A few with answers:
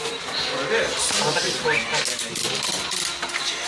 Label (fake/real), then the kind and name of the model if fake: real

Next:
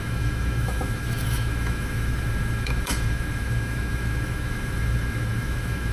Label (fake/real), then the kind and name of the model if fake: fake, autoencoder, DAC-VAE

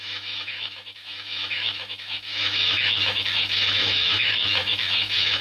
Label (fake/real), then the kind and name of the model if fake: fake, autoencoder, DAC-VAE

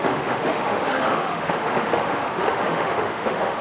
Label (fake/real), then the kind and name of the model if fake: fake, autoencoder, DAC-VAE